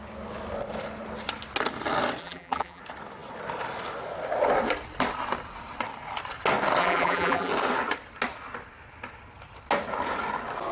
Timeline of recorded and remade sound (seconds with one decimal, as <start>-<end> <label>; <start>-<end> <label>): 0.0-2.2 recorded; 2.2-2.8 remade; 2.8-6.8 recorded; 6.8-7.5 remade; 7.5-10.7 recorded